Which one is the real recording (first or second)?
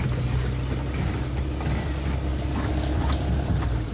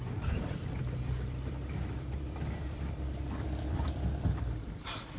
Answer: first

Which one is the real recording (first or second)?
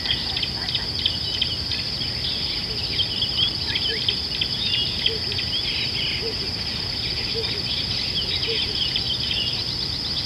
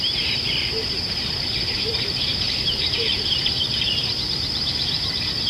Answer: first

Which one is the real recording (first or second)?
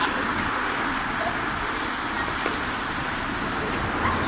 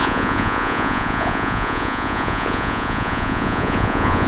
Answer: first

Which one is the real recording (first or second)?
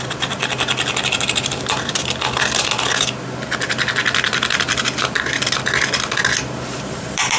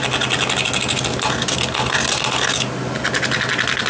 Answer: second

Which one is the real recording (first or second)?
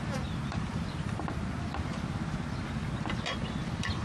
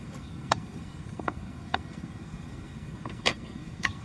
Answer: first